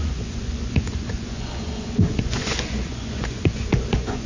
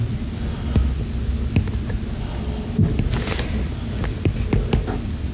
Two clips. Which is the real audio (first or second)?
second